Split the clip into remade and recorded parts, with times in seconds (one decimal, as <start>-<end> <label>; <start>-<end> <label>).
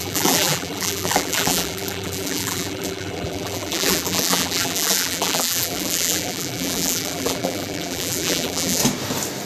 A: 0.0-8.8 remade; 8.8-9.5 recorded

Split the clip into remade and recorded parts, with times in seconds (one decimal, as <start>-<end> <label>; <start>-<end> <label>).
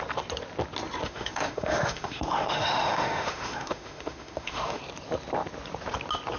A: 0.0-1.0 recorded; 1.0-4.8 remade; 4.8-6.4 recorded